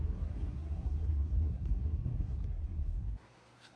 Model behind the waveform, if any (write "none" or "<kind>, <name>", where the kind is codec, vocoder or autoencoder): codec, SNAC